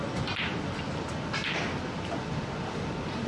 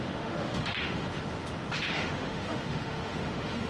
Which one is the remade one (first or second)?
second